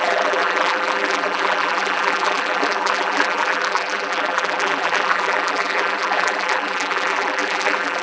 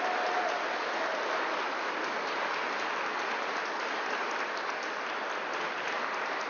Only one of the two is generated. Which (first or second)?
first